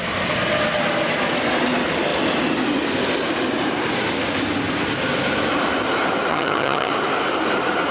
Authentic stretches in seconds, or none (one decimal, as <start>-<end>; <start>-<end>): 0.0-6.3; 6.9-7.9